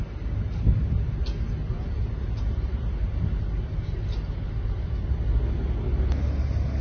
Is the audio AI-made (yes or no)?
no